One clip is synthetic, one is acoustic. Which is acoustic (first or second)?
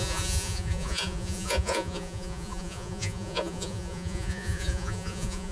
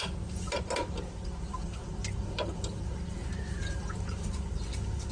second